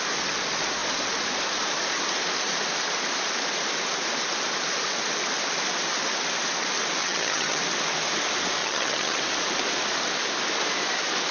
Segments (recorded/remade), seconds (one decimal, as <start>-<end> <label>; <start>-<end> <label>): 0.0-7.0 recorded; 7.0-7.6 remade; 7.6-8.6 recorded; 8.6-9.2 remade; 9.2-11.3 recorded